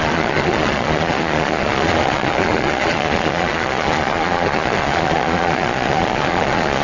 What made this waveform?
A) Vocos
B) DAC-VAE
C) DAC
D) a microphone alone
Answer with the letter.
A